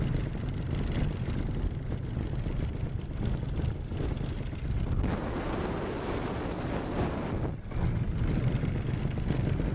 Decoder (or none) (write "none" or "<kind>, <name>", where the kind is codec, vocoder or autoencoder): none